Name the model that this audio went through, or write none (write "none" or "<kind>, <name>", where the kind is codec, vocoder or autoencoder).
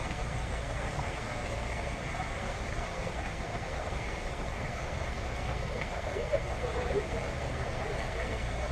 codec, SNAC